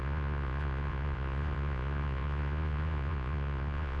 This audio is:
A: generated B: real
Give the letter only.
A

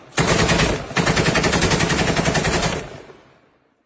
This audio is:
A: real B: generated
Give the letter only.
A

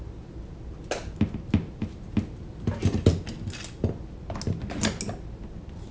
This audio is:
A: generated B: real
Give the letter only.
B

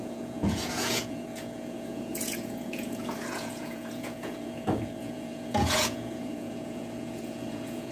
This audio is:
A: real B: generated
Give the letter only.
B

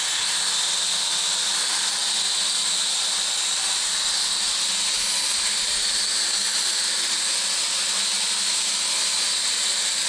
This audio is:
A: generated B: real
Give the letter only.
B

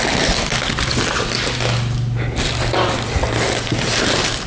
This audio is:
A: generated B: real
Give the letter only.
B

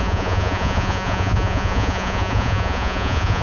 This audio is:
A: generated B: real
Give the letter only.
A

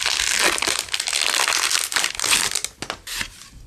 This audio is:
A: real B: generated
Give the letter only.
A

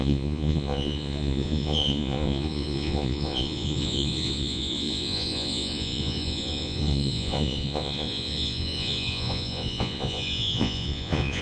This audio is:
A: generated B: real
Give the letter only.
A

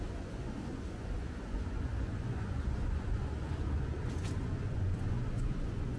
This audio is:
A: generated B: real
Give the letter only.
A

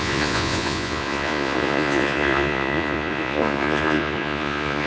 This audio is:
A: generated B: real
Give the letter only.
A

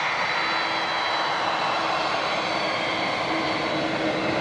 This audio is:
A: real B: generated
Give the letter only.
A